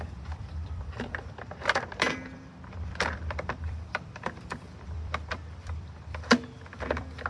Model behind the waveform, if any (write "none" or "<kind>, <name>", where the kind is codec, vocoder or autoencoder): vocoder, BigVGAN v2